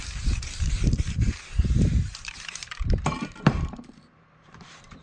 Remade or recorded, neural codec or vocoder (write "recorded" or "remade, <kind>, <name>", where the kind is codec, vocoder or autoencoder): remade, vocoder, BigVGAN v2